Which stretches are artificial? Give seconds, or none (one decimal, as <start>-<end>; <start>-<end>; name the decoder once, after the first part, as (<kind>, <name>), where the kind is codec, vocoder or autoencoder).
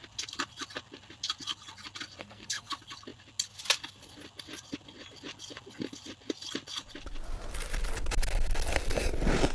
2.2-2.7 (codec, SNAC)